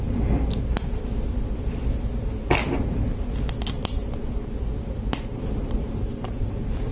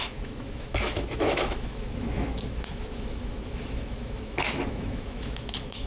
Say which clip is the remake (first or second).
second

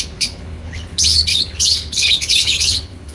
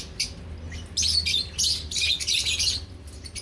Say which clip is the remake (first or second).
first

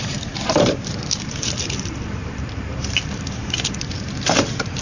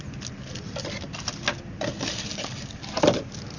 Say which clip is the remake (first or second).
first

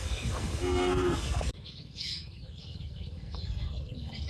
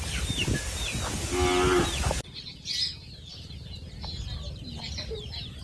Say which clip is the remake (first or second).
first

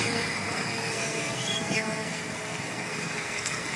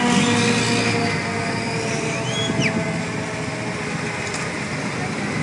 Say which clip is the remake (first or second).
first